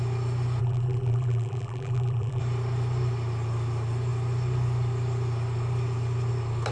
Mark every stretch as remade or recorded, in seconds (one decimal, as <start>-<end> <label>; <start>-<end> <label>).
0.0-0.6 recorded; 0.6-2.4 remade; 2.4-6.7 recorded